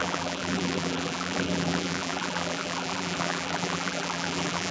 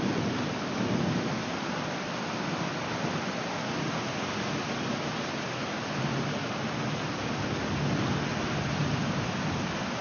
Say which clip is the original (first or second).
second